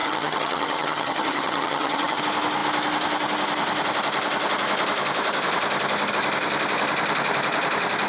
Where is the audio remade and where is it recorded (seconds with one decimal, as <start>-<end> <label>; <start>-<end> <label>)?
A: 0.0-2.2 remade; 2.2-8.1 recorded